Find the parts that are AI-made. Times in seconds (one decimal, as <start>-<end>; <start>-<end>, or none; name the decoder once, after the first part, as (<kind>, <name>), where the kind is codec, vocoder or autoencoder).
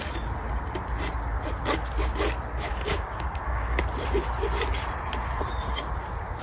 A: 2.7-3.8 (codec, DAC)